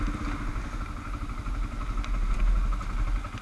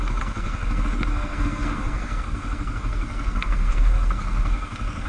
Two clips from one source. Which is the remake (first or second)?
second